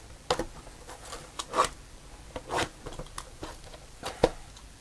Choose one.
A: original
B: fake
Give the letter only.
A